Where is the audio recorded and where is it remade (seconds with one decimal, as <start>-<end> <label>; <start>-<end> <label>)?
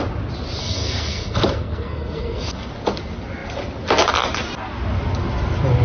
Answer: 0.0-0.6 recorded; 0.6-2.7 remade; 2.7-5.8 recorded